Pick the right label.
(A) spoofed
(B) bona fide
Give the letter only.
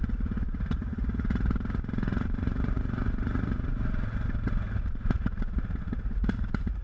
A